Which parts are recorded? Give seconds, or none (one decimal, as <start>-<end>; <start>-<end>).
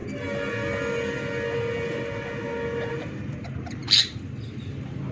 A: 0.0-2.9